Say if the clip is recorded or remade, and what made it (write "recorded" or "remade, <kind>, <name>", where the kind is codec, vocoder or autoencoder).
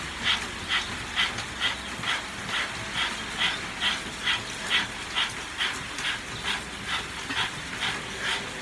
recorded